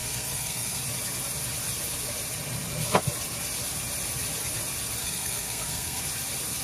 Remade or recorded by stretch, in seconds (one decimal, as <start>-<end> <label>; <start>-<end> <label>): 0.0-0.8 remade; 0.8-5.0 recorded; 5.0-6.0 remade; 6.0-6.6 recorded